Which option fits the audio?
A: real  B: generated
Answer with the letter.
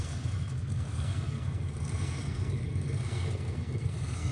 B